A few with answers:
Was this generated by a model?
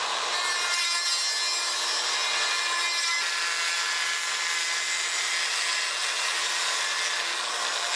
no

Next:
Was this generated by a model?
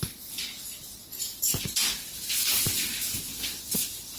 no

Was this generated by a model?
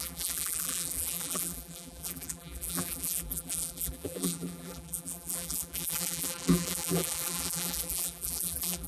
yes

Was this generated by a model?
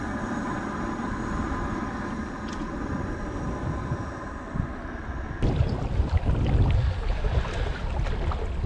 no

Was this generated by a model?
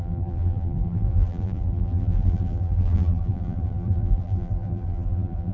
yes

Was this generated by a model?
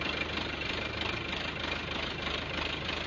yes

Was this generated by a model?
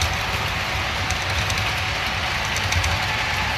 no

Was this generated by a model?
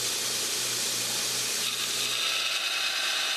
no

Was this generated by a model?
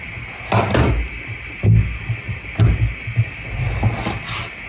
no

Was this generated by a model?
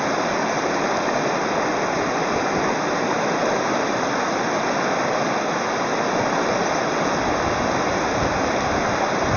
no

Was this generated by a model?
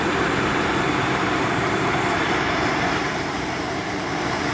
yes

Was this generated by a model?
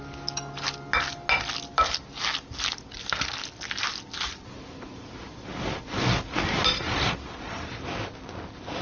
no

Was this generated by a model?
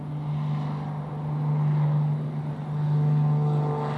no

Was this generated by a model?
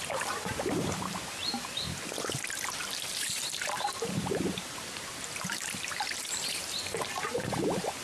yes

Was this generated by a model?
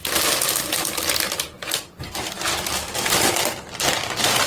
no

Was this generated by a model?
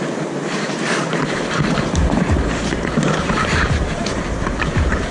yes